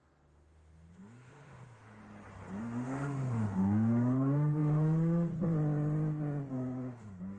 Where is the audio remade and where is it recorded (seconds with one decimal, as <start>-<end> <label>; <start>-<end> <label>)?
0.0-2.0 remade; 2.0-2.6 recorded; 2.6-5.3 remade; 5.3-6.5 recorded; 6.5-7.4 remade